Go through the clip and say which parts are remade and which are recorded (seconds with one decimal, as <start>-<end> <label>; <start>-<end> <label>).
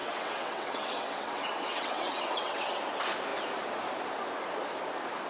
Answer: 0.0-2.8 remade; 2.8-5.3 recorded